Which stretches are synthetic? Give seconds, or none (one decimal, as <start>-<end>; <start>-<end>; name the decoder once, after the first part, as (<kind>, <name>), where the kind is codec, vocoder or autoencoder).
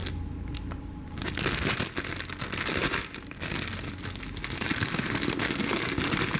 none